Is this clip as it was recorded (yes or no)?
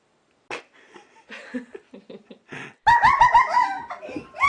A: yes